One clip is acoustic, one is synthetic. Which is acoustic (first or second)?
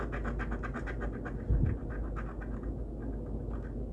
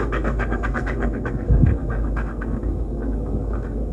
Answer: first